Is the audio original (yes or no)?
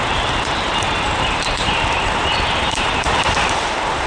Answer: no